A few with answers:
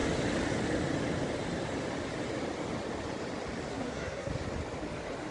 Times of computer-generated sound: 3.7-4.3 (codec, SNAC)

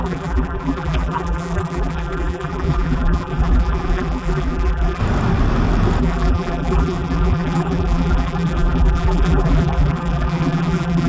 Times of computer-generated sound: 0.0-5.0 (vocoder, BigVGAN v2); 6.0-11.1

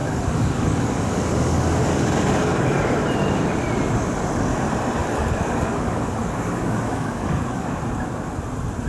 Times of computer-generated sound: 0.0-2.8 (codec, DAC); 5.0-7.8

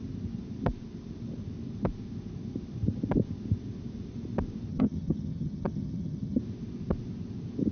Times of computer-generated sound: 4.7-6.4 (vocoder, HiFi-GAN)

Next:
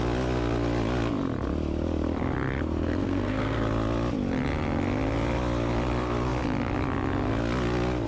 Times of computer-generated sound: 3.0-3.6 (codec, SNAC)